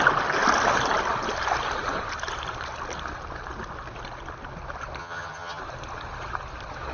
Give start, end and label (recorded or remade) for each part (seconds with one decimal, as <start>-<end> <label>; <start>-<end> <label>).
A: 0.0-5.0 recorded; 5.0-5.6 remade; 5.6-6.9 recorded